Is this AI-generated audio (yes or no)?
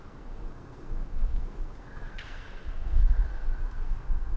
yes